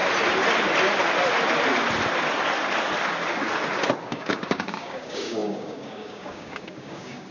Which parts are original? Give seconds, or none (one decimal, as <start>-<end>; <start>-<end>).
0.0-4.0